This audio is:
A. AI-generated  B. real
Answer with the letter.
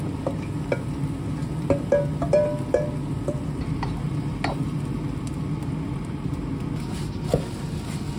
B